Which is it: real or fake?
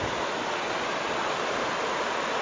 real